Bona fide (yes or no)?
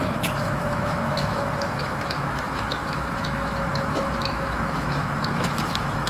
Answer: no